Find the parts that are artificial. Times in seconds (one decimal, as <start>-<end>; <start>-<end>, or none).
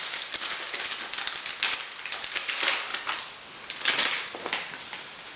none